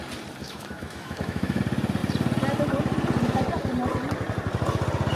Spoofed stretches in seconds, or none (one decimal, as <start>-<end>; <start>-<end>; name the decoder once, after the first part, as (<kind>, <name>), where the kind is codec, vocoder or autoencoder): 0.4-1.6 (autoencoder, DAC-VAE)